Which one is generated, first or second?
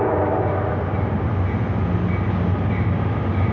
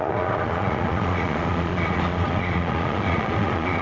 second